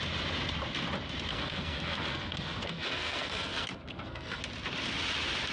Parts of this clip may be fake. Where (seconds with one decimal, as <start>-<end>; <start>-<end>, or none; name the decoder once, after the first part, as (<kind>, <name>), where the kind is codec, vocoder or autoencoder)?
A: 1.3-4.4 (codec, SNAC)